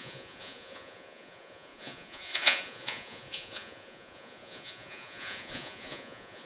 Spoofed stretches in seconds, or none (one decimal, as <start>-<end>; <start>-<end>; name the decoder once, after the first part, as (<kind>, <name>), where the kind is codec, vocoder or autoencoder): 0.0-6.5 (vocoder, Vocos)